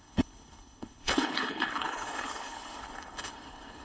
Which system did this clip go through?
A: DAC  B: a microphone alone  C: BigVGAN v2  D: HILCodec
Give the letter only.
D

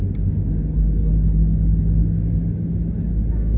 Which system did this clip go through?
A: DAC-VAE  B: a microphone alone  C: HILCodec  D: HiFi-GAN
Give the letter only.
B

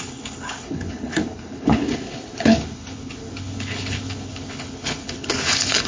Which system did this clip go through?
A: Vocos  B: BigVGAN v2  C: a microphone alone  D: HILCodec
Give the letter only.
D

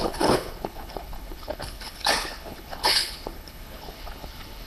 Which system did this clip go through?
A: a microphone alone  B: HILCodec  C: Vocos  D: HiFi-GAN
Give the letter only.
B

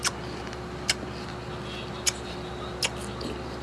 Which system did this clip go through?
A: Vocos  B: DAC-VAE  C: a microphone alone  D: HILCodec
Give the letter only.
C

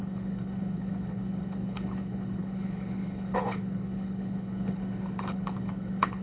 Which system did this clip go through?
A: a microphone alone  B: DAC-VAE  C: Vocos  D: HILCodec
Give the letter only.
D